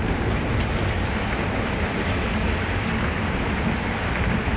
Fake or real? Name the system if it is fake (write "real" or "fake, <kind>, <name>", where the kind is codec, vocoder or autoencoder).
real